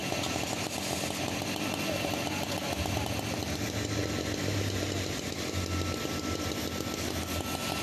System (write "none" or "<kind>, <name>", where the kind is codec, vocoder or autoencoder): none